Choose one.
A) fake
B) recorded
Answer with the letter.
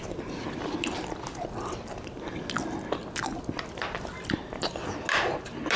B